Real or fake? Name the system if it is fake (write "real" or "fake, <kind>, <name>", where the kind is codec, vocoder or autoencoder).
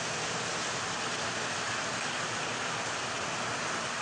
real